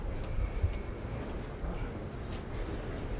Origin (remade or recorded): recorded